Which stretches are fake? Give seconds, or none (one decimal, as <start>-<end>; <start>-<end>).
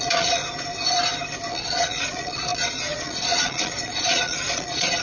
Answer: 0.0-0.4; 1.5-5.0